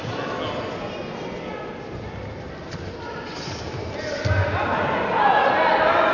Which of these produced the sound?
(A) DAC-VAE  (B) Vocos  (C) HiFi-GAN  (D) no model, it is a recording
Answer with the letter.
D